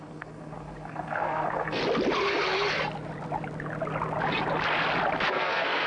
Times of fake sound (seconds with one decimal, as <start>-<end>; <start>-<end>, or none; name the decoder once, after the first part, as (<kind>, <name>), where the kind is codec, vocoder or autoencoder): 0.0-1.8 (codec, SNAC); 5.3-5.9